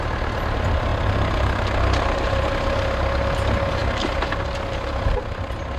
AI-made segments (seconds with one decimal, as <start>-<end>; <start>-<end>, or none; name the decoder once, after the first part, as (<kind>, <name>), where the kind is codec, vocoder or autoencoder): none